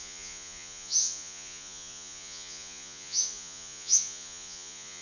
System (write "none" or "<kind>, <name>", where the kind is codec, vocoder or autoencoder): vocoder, Vocos